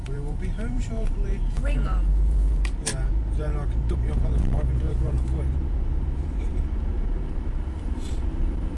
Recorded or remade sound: remade